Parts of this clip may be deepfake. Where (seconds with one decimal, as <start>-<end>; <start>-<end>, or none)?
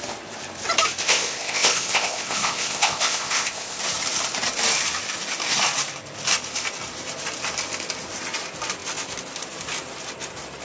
1.0-3.8